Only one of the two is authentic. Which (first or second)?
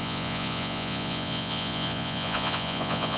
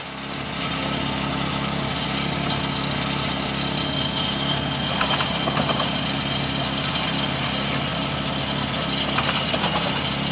second